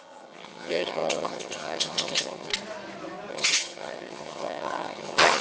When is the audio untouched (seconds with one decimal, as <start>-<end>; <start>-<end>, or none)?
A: 2.5-3.3